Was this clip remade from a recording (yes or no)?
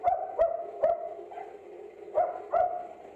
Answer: no